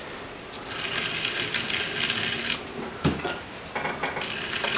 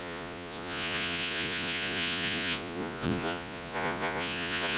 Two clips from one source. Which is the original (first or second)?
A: first